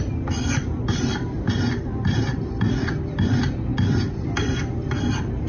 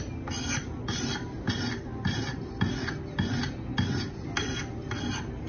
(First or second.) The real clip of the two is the second